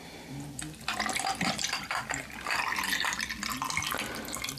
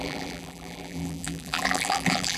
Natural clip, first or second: first